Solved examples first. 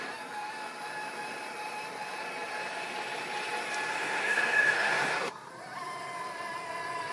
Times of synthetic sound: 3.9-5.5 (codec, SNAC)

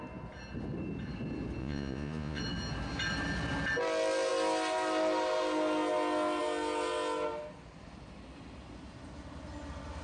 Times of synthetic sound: 1.6-2.4 (vocoder, Vocos)

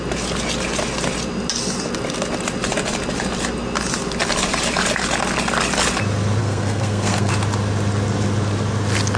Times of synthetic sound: 6.4-7.3 (codec, SNAC)

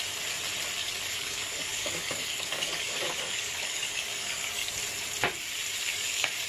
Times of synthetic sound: 0.8-4.7 (codec, DAC); 5.9-6.5

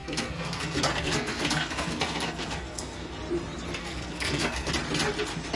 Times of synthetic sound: 0.0-3.1 (codec, SNAC); 3.8-4.7

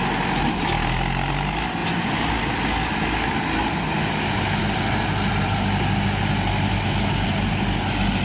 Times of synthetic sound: 1.8-2.4 (vocoder, BigVGAN v2)

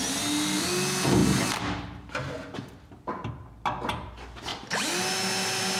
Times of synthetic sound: none